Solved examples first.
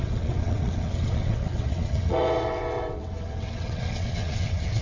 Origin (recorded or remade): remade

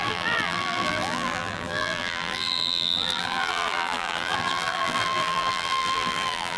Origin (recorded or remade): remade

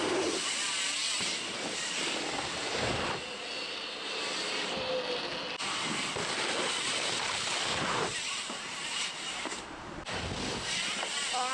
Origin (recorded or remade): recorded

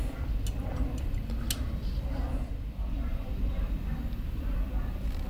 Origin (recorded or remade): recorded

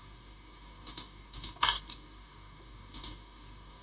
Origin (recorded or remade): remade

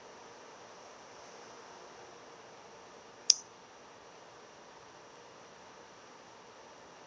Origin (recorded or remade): recorded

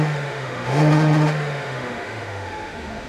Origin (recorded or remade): remade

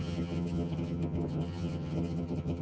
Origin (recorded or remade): remade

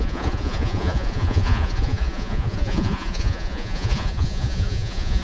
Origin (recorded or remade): remade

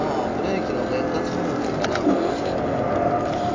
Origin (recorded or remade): recorded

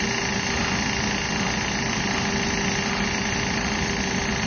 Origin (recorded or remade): recorded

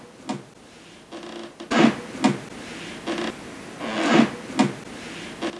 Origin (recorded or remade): recorded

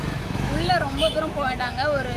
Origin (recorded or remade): remade